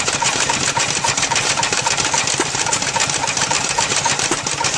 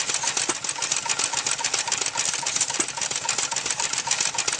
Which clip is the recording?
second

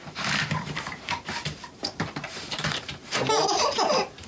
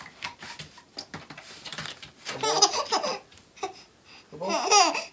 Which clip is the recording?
second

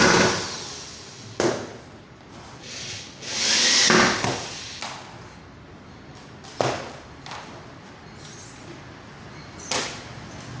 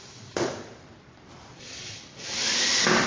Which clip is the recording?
first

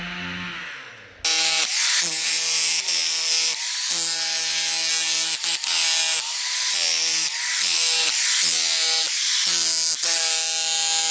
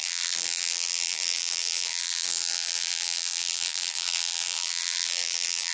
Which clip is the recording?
first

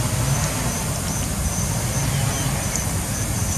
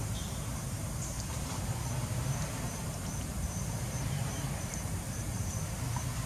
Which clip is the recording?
first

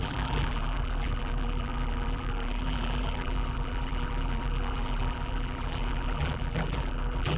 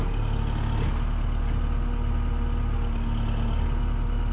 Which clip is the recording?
second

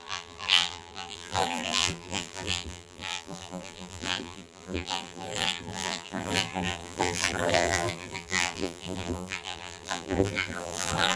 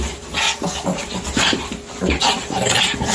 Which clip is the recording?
second